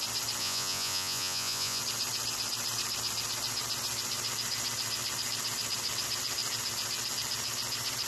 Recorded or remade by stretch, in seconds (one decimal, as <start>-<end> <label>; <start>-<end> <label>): 0.0-0.4 recorded; 0.4-1.8 remade; 1.8-8.1 recorded